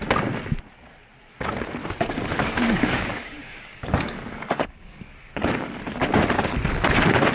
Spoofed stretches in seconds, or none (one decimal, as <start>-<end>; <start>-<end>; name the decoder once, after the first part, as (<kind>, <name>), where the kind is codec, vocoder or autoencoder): 1.8-5.8 (codec, DAC)